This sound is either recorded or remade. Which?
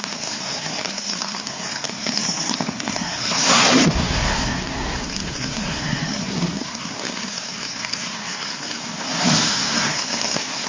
remade